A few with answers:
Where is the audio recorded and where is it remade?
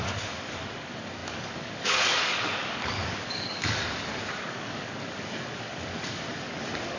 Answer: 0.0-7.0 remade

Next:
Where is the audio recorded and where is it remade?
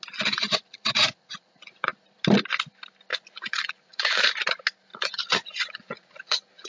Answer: 0.0-0.6 recorded; 0.6-1.9 remade; 1.9-3.1 recorded; 3.1-4.2 remade; 4.2-4.9 recorded; 4.9-6.7 remade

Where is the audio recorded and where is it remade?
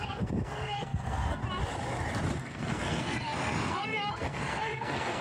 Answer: 0.0-1.4 remade; 1.4-2.4 recorded; 2.4-5.2 remade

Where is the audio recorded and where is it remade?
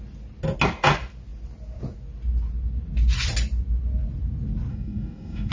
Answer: 0.0-4.7 recorded; 4.7-5.5 remade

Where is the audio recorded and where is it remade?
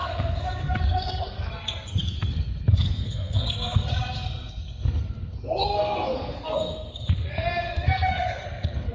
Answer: 0.0-8.9 remade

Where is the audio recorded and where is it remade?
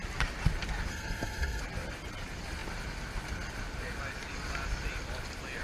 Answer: 0.0-0.9 recorded; 0.9-1.6 remade; 1.6-5.6 recorded